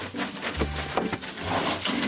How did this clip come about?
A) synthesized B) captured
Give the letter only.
B